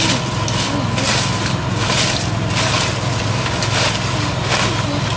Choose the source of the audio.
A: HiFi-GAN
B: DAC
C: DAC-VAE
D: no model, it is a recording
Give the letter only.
D